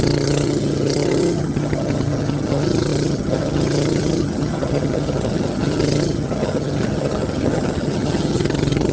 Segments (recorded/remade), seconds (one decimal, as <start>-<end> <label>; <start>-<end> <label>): 0.0-8.9 remade